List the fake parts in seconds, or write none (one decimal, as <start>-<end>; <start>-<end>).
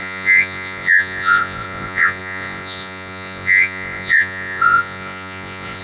0.0-5.8